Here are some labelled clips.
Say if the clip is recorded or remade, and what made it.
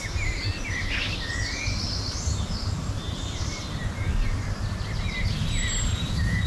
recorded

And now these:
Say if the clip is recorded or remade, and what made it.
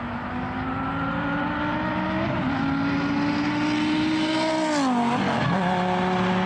recorded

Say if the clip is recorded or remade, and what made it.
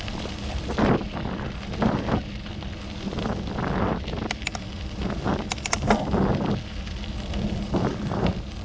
recorded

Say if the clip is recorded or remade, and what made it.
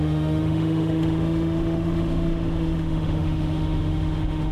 remade, autoencoder, DAC-VAE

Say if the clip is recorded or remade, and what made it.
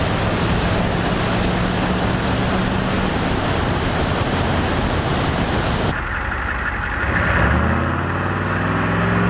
recorded